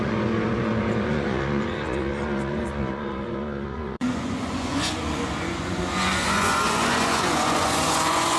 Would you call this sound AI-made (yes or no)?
yes